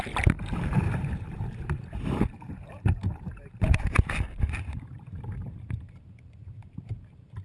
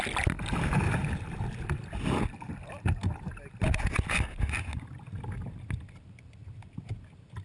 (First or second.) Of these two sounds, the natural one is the second